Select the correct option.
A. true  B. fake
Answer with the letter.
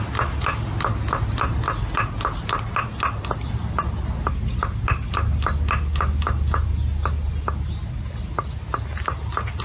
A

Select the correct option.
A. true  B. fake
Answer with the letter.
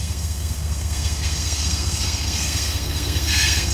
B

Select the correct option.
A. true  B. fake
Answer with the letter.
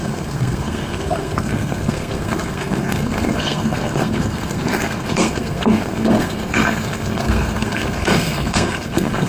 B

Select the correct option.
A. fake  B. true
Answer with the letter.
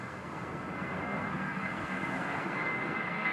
A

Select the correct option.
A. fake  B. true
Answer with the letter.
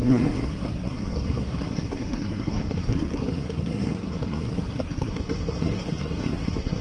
A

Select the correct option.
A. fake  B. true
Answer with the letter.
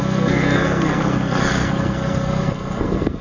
A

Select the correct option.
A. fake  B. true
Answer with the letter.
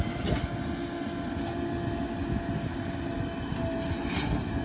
B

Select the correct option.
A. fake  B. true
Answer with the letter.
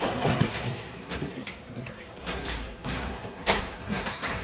A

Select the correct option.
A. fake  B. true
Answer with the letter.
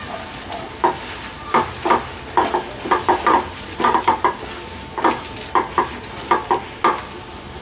B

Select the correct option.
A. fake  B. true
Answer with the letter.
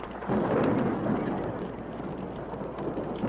B